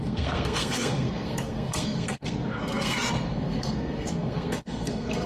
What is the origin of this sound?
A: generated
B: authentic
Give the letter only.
A